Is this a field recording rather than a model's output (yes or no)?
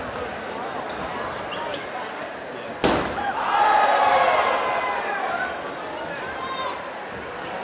yes